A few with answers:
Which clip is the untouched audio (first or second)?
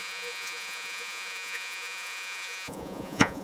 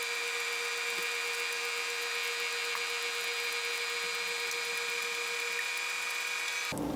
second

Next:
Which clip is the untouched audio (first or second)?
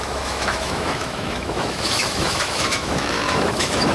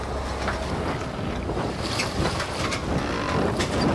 second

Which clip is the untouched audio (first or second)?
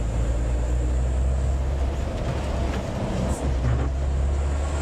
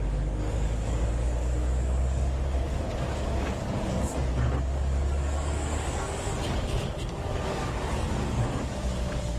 first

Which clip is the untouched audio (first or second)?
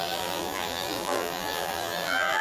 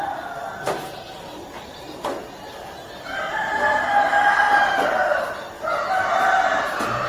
second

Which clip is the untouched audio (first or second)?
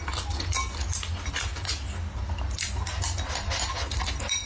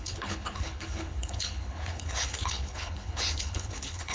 first